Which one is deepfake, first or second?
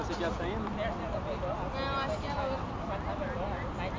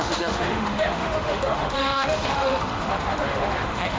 second